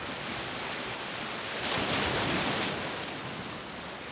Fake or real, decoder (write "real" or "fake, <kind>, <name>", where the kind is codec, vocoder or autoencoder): real